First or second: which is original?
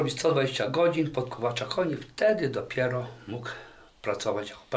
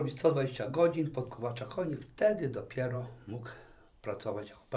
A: first